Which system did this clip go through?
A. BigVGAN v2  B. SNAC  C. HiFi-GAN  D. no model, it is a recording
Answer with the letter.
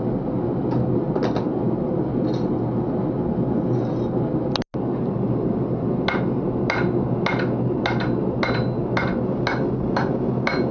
D